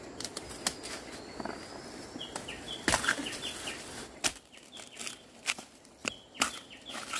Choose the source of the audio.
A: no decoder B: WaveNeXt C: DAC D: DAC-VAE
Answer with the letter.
A